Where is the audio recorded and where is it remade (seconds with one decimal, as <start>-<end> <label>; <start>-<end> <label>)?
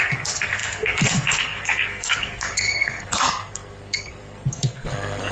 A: 0.0-5.3 remade